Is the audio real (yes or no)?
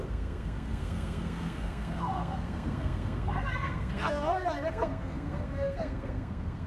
no